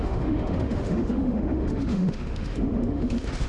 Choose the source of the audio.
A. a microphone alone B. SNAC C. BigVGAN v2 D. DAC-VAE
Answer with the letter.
D